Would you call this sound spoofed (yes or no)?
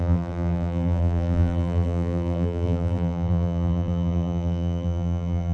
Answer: yes